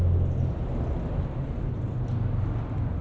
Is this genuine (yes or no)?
yes